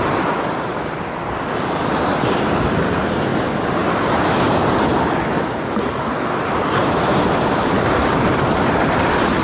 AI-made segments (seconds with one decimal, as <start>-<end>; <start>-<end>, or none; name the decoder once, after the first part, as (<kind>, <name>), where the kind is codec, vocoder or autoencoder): none